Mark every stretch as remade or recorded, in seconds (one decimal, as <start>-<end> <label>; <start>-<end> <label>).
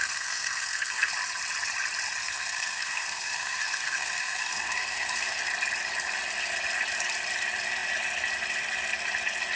0.0-1.1 remade; 1.1-2.2 recorded; 2.2-5.4 remade; 5.4-9.6 recorded